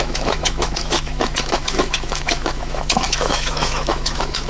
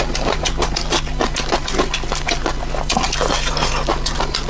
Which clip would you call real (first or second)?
second